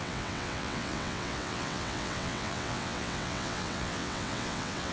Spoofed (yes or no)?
yes